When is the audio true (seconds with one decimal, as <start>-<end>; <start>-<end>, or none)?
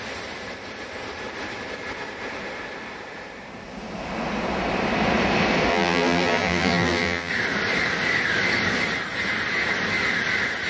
0.0-5.7; 7.3-10.7